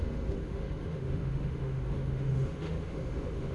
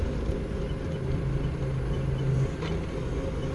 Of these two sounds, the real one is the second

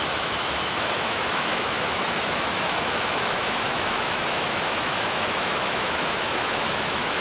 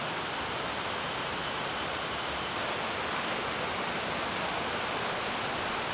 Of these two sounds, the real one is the second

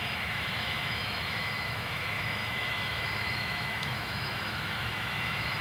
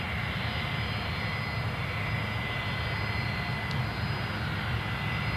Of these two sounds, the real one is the second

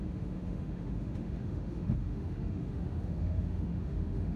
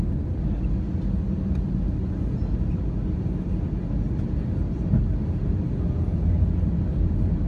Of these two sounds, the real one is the second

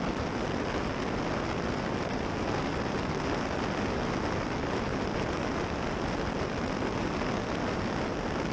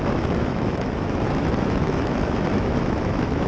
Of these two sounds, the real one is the first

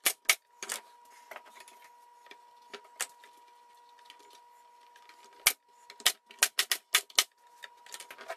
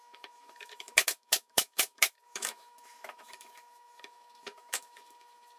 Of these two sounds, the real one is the first